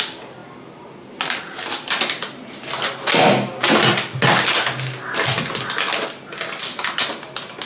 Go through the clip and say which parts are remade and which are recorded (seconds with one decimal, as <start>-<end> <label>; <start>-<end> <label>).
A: 0.0-7.7 recorded